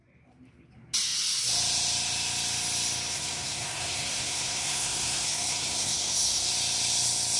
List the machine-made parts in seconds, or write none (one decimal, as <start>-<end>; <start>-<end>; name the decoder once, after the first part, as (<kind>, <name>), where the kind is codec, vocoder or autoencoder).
3.1-6.5 (codec, SNAC)